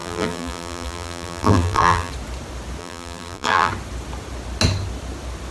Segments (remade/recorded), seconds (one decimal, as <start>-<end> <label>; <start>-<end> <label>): 0.0-2.1 remade; 2.1-2.8 recorded; 2.8-3.7 remade; 3.7-5.5 recorded